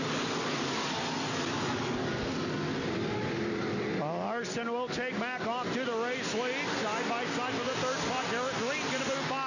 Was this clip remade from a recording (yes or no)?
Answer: no